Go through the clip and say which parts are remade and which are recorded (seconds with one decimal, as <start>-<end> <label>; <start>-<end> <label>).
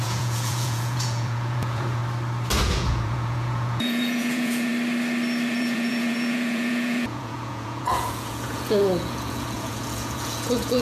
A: 0.0-2.0 remade; 2.0-2.6 recorded; 2.6-4.7 remade; 4.7-5.5 recorded; 5.5-10.8 remade